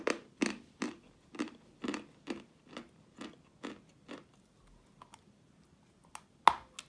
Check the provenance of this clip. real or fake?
real